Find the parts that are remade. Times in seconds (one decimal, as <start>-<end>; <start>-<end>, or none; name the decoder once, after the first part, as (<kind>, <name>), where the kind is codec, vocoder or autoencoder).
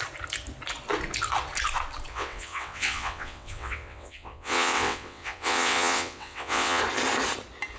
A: 2.1-6.8 (vocoder, WaveNeXt)